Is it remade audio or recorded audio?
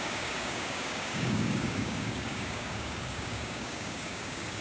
remade